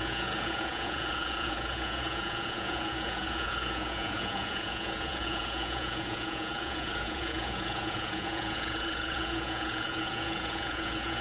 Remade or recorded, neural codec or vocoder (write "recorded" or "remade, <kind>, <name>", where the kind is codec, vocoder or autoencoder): remade, vocoder, Vocos